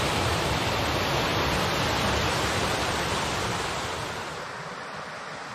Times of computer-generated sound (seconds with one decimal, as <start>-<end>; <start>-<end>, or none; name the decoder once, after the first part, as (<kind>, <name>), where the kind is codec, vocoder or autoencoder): 1.3-4.6 (vocoder, BigVGAN v2)